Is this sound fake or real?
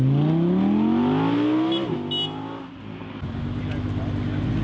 real